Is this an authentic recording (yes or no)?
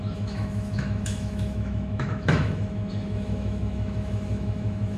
no